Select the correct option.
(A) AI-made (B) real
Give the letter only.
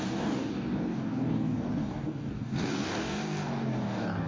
A